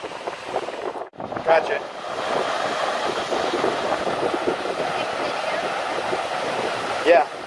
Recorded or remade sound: recorded